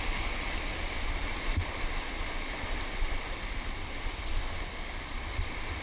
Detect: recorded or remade recorded